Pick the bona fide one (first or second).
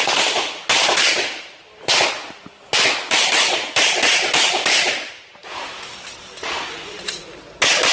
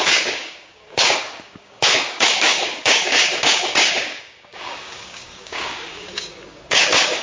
first